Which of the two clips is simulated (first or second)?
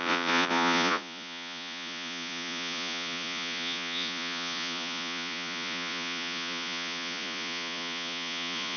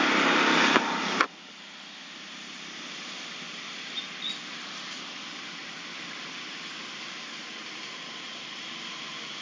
first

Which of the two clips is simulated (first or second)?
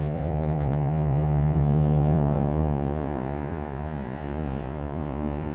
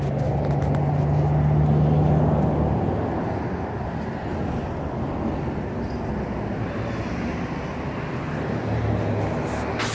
first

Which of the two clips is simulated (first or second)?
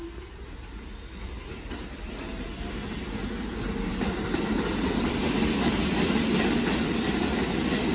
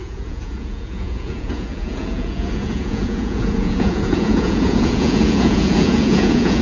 second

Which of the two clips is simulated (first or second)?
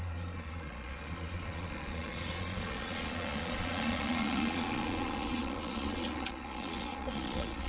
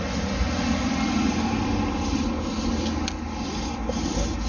first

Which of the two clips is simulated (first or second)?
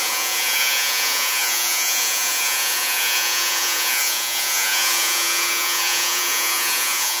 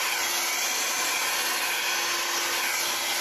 first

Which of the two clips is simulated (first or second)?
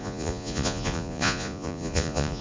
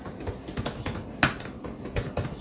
first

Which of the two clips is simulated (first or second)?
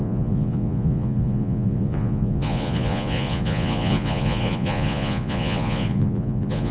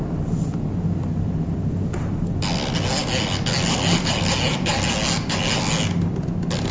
first